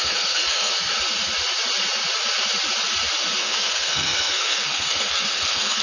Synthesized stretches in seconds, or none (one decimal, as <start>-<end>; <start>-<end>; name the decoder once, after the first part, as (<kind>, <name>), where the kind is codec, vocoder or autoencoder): 0.0-0.7 (codec, SNAC); 3.4-5.8